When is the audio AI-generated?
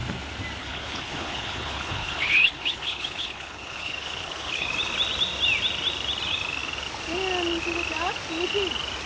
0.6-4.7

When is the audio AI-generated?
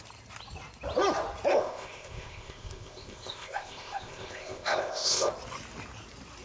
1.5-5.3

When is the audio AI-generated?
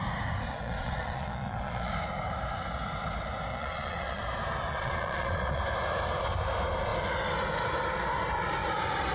0.5-1.9; 3.5-4.2; 4.7-5.6